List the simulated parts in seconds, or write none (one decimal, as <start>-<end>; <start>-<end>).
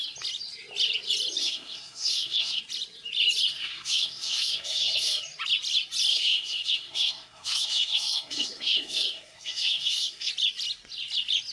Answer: 1.4-2.6; 3.5-5.2; 6.1-10.3